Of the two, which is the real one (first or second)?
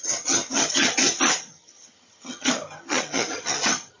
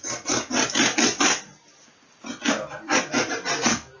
second